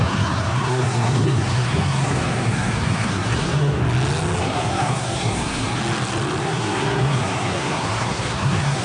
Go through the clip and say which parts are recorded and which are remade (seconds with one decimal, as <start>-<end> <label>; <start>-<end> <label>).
0.0-3.8 remade; 3.8-4.4 recorded; 4.4-5.8 remade; 5.8-6.4 recorded; 6.4-8.8 remade